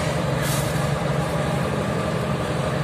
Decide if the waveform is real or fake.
fake